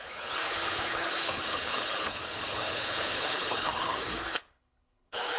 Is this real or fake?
fake